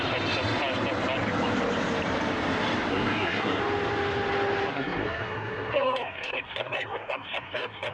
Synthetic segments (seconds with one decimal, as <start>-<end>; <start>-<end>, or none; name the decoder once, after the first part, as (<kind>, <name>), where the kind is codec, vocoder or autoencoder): 2.9-3.6 (codec, SNAC); 4.7-7.9